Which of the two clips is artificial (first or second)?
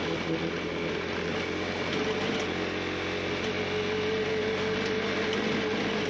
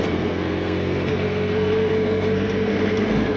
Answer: second